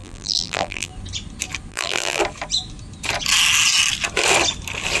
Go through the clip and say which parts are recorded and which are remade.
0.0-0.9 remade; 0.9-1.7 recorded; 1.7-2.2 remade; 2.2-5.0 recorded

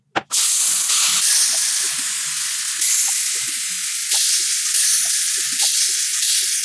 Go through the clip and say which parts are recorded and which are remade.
0.0-1.1 recorded; 1.1-1.8 remade; 1.8-4.0 recorded; 4.0-6.6 remade

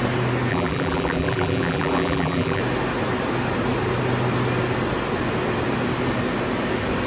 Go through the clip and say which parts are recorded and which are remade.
0.0-0.5 recorded; 0.5-2.6 remade; 2.6-7.1 recorded

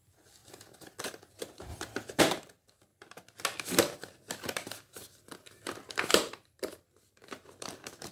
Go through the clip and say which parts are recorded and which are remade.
0.0-0.4 remade; 0.4-1.0 recorded; 1.0-1.7 remade; 1.7-2.2 recorded; 2.2-2.9 remade; 2.9-6.1 recorded; 6.1-8.1 remade

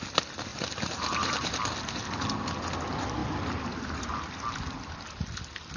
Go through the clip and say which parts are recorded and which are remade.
0.0-0.5 recorded; 0.5-1.5 remade; 1.5-5.8 recorded

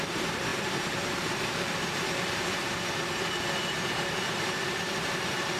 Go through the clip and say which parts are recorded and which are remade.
0.0-5.6 remade

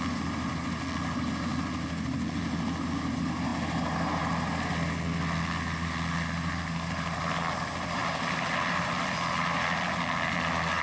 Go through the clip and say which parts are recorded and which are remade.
0.0-10.8 recorded